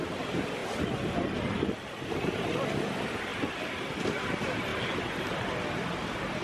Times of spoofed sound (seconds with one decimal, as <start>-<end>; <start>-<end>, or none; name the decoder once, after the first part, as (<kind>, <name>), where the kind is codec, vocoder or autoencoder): none